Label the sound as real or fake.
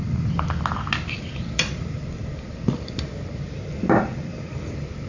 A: real